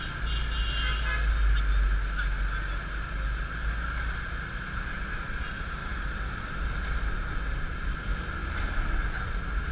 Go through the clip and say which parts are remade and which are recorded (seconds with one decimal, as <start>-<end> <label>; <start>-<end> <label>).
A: 0.0-5.8 recorded; 5.8-6.8 remade; 6.8-9.7 recorded